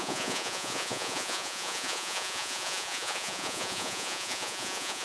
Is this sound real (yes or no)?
no